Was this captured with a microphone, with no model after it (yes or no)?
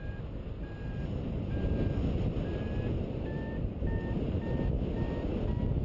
yes